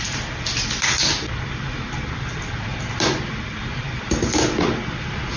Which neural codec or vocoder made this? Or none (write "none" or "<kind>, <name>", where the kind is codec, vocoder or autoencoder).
none